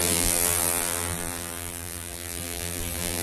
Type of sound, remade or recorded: remade